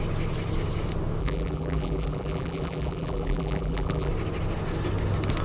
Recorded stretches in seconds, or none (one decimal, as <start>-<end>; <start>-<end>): 0.0-1.2; 4.1-5.4